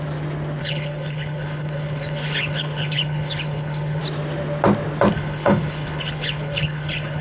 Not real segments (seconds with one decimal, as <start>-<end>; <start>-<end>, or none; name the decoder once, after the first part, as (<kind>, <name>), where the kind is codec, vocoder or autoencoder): 0.6-4.0 (codec, HILCodec); 5.1-7.2